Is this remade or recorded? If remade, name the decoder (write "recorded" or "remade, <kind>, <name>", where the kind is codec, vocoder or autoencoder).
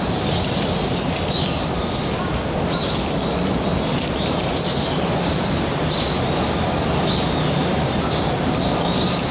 recorded